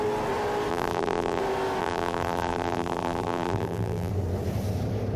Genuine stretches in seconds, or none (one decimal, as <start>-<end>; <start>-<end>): 0.0-0.7; 1.4-1.8; 4.1-5.2